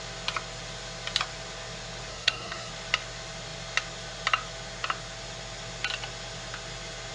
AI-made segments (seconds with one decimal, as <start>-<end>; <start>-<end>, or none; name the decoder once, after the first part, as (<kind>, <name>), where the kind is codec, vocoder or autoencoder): 2.1-2.7 (codec, SNAC)